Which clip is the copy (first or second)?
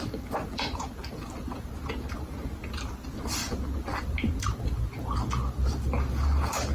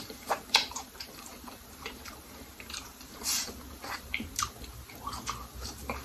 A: second